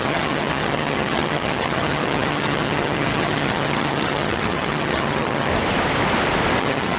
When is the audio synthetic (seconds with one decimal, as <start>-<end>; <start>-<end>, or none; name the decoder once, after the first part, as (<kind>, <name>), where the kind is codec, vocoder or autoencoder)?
0.0-5.5 (vocoder, HiFi-GAN); 6.6-7.0